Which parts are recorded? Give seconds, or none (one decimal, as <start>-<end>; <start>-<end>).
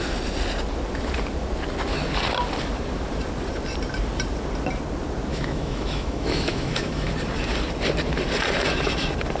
0.0-5.3; 7.1-9.4